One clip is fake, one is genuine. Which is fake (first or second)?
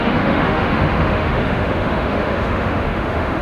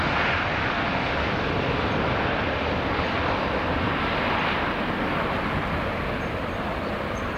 first